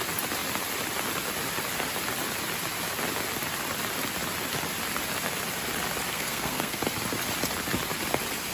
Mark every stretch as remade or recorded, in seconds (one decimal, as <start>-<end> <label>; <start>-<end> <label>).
0.0-6.1 recorded; 6.1-6.8 remade; 6.8-8.5 recorded